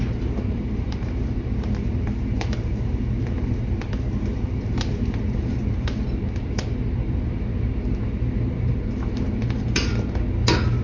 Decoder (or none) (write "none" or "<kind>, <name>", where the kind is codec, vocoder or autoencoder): vocoder, BigVGAN v2